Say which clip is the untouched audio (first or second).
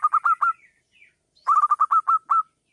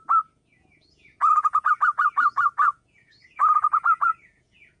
first